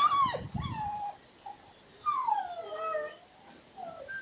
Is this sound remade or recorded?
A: recorded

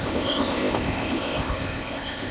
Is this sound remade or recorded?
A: remade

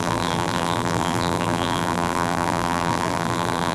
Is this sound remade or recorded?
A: remade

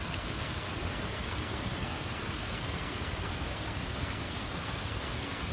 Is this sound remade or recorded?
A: remade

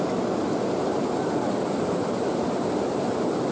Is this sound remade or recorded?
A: remade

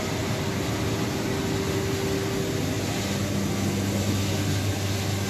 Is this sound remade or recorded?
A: recorded